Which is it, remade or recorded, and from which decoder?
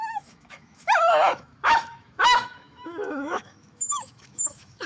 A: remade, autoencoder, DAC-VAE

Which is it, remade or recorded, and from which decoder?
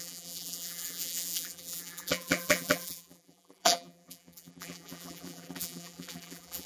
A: remade, vocoder, BigVGAN v2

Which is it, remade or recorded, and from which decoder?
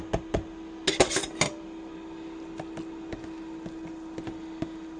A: recorded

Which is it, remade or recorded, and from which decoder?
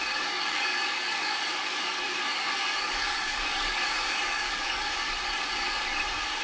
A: remade, codec, DAC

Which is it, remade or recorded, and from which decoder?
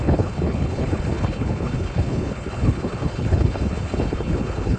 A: remade, codec, HILCodec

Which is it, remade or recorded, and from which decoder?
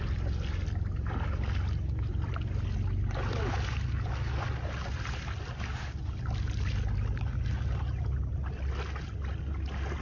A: recorded